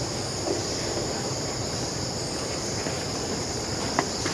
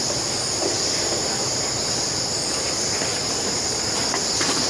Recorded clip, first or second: second